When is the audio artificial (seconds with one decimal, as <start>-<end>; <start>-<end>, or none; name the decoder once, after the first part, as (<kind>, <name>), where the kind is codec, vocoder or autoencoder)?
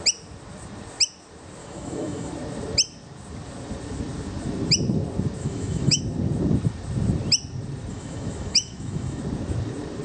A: 1.6-2.3 (autoencoder, DAC-VAE); 5.4-6.0; 7.9-9.2